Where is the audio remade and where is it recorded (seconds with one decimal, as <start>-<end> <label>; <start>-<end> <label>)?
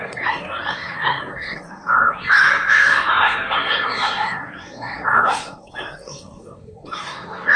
0.0-7.6 remade